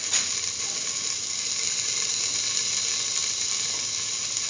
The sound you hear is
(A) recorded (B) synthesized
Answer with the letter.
A